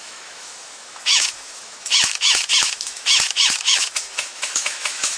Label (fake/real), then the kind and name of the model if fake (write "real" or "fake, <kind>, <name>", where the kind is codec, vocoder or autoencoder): fake, autoencoder, DAC-VAE